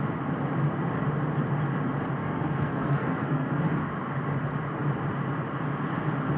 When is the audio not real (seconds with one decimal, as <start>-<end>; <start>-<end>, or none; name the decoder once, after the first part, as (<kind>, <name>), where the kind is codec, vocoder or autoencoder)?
2.2-3.6 (codec, SNAC)